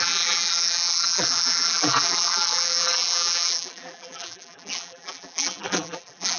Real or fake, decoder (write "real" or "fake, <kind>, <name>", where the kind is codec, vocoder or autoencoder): fake, vocoder, BigVGAN v2